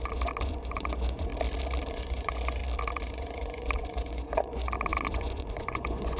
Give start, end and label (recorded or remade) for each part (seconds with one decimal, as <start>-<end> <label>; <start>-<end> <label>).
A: 0.0-1.3 remade; 1.3-1.9 recorded; 1.9-2.6 remade; 2.6-3.1 recorded; 3.1-6.2 remade